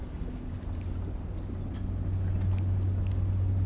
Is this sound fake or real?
real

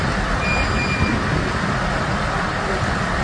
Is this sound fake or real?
real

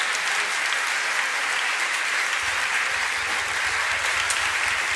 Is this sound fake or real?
real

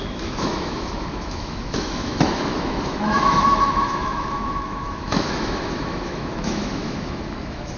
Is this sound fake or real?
fake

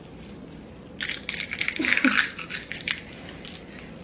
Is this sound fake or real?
real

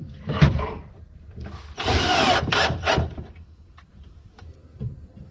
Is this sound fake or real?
fake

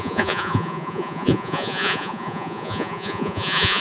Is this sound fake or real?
fake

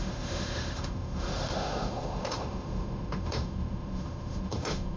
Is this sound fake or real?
fake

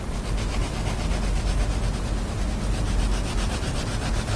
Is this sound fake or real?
real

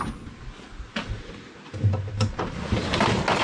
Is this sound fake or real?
real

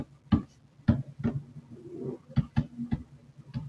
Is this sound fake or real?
real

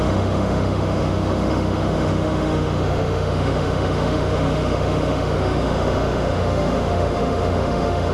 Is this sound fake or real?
fake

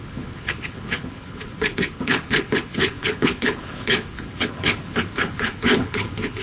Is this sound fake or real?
fake